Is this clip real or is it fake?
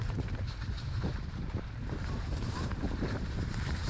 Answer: fake